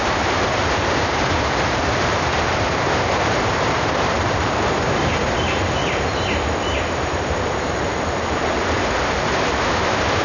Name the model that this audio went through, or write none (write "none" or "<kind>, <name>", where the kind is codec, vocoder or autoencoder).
vocoder, BigVGAN v2